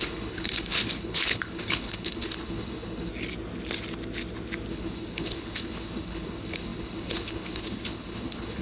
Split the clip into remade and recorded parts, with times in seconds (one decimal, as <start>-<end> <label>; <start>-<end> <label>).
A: 0.0-3.1 remade; 3.1-4.7 recorded; 4.7-8.6 remade